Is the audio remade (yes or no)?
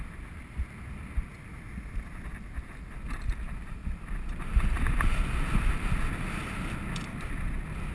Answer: no